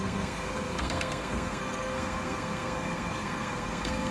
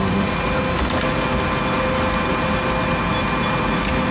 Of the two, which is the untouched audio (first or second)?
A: second